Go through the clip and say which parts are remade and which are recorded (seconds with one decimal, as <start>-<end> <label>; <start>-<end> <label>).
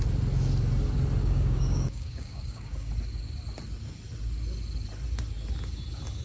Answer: 0.0-1.2 recorded; 1.2-2.9 remade; 2.9-6.2 recorded